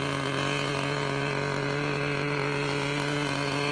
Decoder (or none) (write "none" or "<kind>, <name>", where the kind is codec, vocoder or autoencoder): none